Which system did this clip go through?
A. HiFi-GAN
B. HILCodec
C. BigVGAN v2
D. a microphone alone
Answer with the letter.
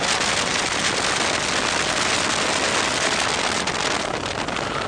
D